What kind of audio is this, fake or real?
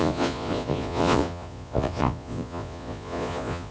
fake